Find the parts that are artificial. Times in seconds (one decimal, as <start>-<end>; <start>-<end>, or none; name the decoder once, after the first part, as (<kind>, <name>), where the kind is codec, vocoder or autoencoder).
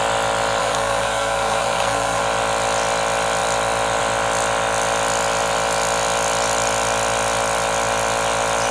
0.6-2.2 (codec, SNAC)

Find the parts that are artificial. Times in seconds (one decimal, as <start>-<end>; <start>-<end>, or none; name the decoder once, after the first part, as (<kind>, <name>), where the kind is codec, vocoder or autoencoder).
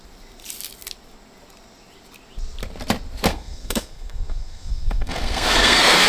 3.3-6.1 (codec, SNAC)